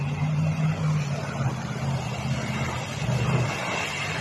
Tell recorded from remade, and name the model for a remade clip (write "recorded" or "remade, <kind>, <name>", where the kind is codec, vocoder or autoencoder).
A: remade, vocoder, BigVGAN v2